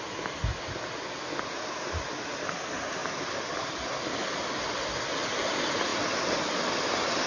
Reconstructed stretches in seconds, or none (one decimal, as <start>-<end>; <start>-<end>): 5.9-6.5